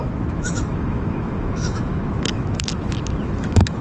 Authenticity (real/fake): fake